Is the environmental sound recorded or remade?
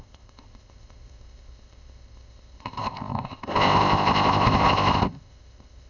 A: remade